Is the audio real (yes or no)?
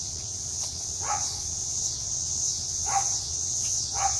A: no